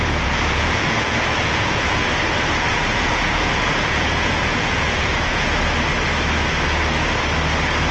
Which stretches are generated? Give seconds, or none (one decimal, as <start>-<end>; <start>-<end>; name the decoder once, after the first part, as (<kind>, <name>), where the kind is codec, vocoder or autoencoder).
0.0-2.0 (vocoder, Vocos); 2.6-5.6